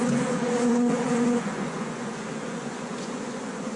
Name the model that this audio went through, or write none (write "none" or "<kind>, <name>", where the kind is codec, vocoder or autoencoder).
vocoder, Vocos